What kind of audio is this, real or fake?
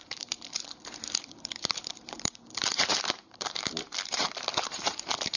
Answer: fake